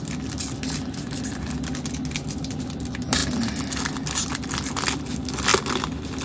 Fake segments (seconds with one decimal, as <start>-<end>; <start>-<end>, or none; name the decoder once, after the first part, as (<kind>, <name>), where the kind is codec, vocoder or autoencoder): none